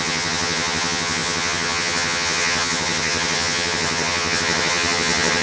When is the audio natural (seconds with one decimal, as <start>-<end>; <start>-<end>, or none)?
none